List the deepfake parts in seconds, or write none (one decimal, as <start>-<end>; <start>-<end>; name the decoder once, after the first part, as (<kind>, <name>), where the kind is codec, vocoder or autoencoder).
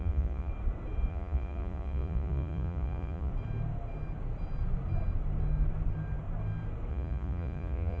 0.0-0.5 (vocoder, Vocos); 1.1-3.3; 6.9-8.0